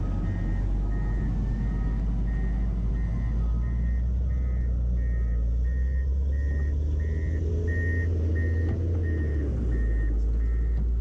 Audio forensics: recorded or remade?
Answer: recorded